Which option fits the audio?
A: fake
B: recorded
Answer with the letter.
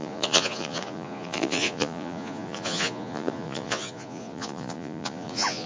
A